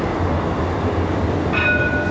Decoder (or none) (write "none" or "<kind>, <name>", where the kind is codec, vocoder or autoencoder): none